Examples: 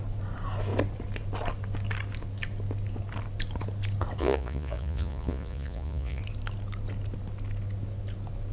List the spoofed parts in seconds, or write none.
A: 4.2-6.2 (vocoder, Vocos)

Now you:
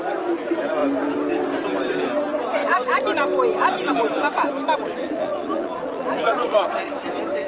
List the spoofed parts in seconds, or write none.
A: 5.0-6.7 (vocoder, Vocos)

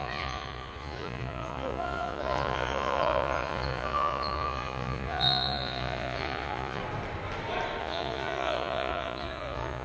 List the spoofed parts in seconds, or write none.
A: 0.0-6.8 (vocoder, Vocos); 7.8-9.8